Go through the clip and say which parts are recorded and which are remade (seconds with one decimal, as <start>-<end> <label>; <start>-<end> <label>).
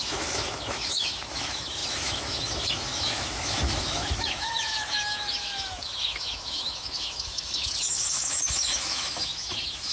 0.0-9.9 remade